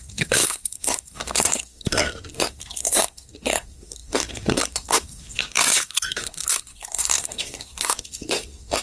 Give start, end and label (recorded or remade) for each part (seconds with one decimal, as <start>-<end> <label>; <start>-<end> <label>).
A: 0.0-8.8 remade

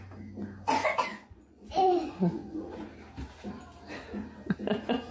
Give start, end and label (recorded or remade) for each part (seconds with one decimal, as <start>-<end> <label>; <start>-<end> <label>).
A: 0.0-1.1 recorded; 1.1-2.9 remade; 2.9-5.1 recorded